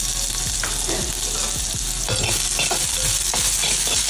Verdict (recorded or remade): recorded